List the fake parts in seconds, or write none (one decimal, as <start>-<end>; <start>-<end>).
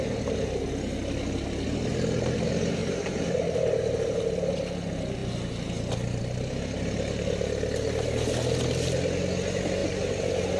2.8-3.3